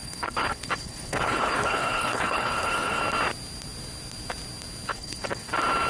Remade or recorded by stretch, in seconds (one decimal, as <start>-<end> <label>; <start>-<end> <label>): 0.0-3.0 remade; 3.0-4.9 recorded; 4.9-5.5 remade; 5.5-5.9 recorded